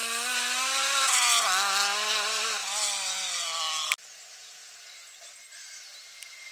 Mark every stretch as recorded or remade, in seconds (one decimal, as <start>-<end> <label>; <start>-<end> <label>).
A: 0.0-1.4 remade; 1.4-2.6 recorded; 2.6-4.7 remade; 4.7-6.5 recorded